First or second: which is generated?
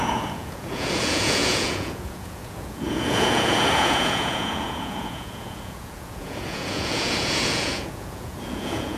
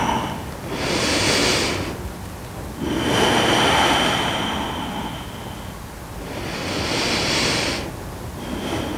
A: first